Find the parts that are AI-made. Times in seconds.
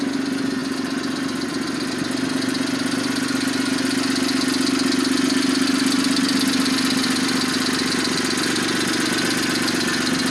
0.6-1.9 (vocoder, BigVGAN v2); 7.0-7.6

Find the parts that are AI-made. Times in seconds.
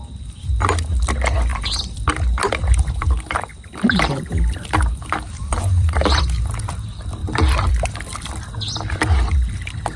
3.5-6.7 (vocoder, BigVGAN v2); 7.2-8.3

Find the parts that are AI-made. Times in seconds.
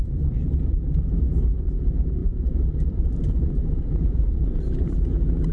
0.0-5.5 (vocoder, BigVGAN v2)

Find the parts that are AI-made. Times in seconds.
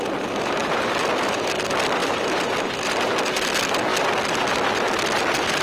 0.6-1.3 (vocoder, BigVGAN v2); 2.0-2.7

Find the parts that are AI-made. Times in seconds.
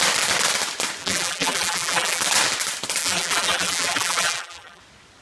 1.0-2.2 (vocoder, BigVGAN v2); 3.0-4.8